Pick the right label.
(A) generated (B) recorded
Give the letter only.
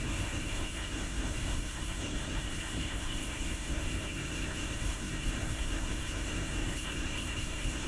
A